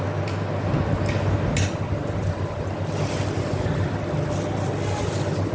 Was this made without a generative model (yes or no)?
yes